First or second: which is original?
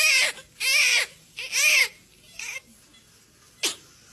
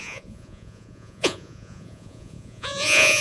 first